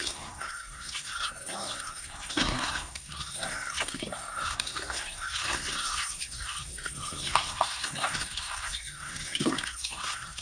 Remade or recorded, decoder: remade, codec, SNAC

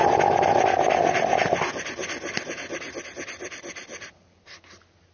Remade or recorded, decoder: recorded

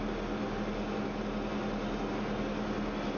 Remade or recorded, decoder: recorded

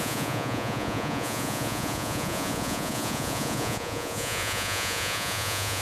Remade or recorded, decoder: remade, vocoder, Vocos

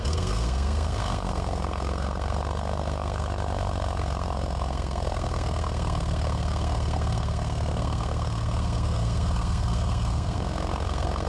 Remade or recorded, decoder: remade, codec, SNAC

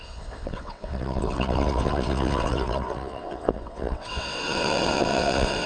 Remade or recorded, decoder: remade, vocoder, WaveNeXt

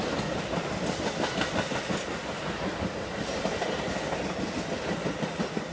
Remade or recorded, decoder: recorded